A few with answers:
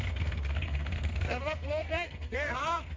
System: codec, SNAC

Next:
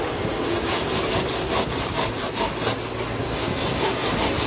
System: none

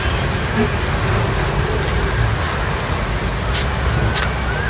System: none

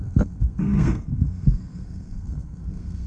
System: codec, SNAC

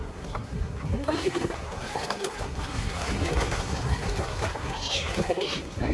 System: codec, SNAC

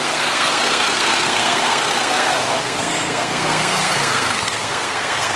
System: codec, SNAC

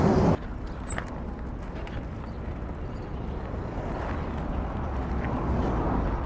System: none